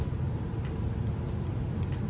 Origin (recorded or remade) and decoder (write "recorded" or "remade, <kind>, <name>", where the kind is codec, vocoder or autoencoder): recorded